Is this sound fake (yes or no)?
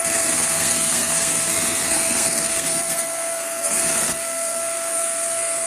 yes